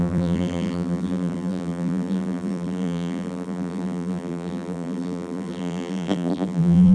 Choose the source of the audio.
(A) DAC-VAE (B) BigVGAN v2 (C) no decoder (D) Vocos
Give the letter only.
B